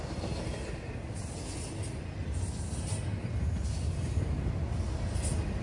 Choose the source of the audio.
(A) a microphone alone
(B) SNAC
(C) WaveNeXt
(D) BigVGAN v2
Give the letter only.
A